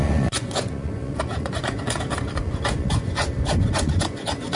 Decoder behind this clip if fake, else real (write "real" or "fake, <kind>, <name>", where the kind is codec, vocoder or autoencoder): fake, vocoder, Vocos